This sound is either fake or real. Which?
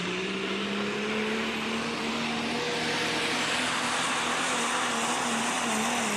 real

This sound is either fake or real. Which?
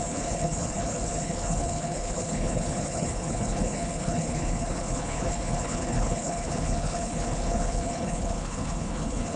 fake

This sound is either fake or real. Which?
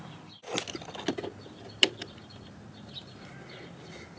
real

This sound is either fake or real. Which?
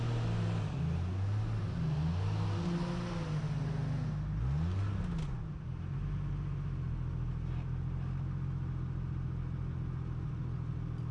real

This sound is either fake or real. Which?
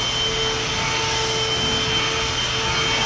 real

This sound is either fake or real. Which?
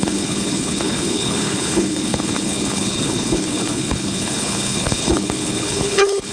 fake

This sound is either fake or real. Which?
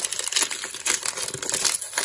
real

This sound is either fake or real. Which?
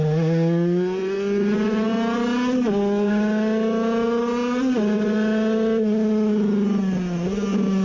real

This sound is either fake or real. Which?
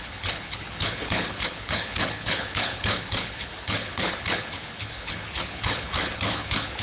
fake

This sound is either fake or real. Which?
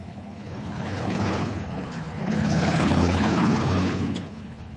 fake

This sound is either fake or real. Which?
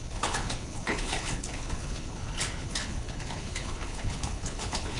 fake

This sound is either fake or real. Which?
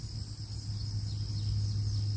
real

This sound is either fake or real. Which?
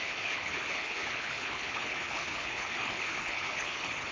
fake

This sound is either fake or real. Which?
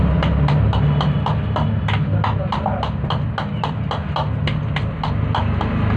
real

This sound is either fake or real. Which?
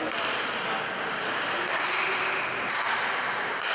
real